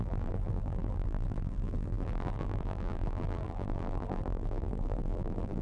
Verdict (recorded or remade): remade